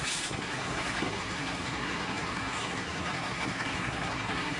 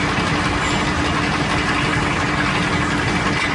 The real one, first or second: second